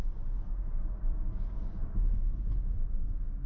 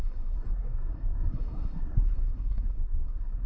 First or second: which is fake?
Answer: second